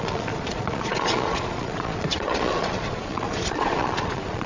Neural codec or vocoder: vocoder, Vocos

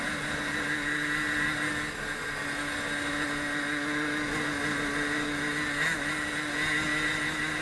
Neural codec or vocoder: none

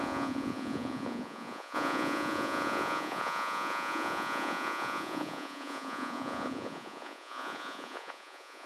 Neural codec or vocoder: vocoder, Vocos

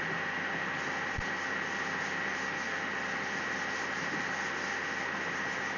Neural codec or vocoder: none